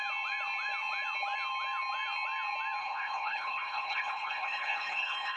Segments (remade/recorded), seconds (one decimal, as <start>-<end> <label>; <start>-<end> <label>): 0.0-2.8 recorded; 2.8-5.4 remade